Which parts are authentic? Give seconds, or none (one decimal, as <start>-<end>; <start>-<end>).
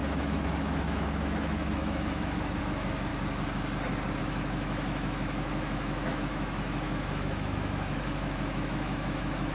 3.1-4.2